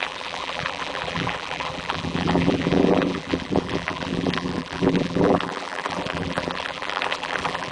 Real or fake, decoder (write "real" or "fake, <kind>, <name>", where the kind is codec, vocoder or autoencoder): fake, vocoder, BigVGAN v2